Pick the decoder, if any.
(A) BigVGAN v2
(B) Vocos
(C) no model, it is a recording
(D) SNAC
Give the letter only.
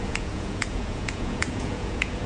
B